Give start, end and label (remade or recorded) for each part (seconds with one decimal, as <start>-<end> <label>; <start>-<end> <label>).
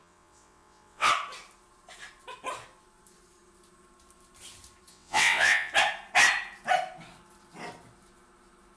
0.0-1.1 remade; 1.1-4.9 recorded; 4.9-5.7 remade; 5.7-8.8 recorded